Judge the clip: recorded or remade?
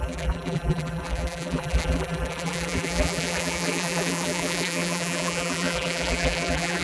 remade